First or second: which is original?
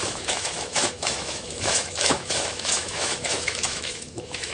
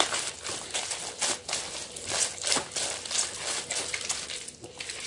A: second